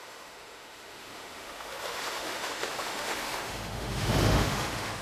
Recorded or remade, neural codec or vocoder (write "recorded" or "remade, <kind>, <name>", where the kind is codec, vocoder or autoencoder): remade, autoencoder, DAC-VAE